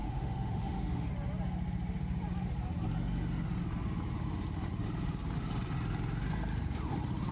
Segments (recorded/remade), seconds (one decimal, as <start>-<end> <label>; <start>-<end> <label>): 0.0-1.1 remade; 1.1-7.3 recorded

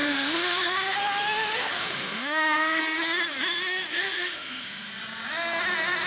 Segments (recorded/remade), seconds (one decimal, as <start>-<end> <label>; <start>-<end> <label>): 0.0-2.8 remade; 2.8-3.9 recorded; 3.9-4.9 remade; 4.9-6.1 recorded

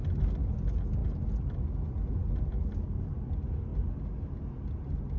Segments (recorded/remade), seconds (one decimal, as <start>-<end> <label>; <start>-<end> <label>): 0.0-5.2 recorded

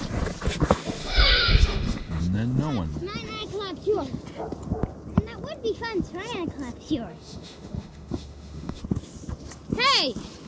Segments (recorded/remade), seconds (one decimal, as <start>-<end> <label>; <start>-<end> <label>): 0.0-1.0 recorded; 1.0-2.2 remade; 2.2-7.1 recorded; 7.1-8.8 remade; 8.8-10.5 recorded

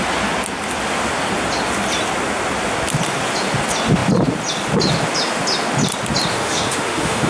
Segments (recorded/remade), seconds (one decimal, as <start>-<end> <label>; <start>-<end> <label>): 0.0-6.3 recorded; 6.3-7.3 remade